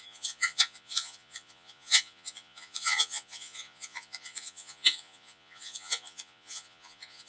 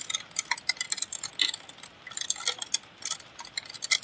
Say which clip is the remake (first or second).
first